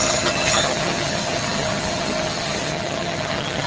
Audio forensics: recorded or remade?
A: remade